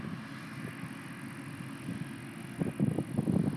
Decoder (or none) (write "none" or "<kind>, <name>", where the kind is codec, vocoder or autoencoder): none